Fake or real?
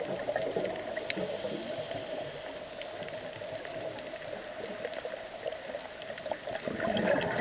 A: real